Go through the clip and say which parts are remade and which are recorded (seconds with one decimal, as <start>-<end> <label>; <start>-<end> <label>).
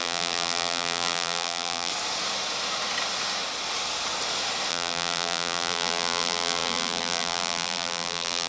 0.0-1.9 remade; 1.9-4.7 recorded; 4.7-8.5 remade